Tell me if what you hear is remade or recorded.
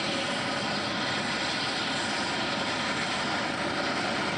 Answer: remade